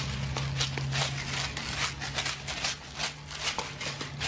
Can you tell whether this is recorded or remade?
recorded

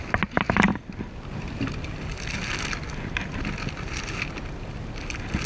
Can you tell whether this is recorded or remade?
recorded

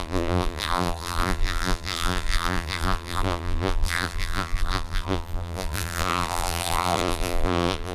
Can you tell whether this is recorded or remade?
remade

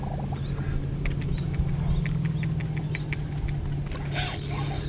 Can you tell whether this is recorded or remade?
recorded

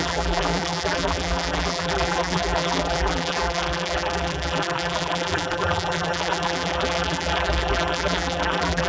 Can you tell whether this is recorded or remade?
remade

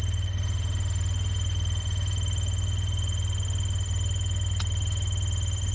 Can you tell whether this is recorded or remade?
recorded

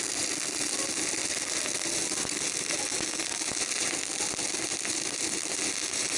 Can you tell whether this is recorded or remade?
recorded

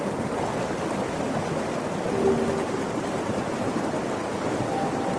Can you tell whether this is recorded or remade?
recorded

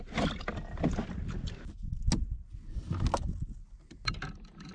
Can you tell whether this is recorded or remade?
recorded